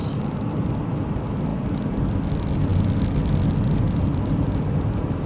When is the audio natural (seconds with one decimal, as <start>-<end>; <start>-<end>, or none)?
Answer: 0.0-5.3